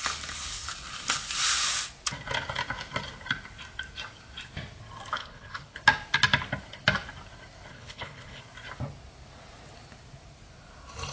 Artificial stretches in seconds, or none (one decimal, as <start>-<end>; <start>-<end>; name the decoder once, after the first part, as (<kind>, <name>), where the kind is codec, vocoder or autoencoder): 5.2-5.8 (codec, HILCodec); 7.7-8.4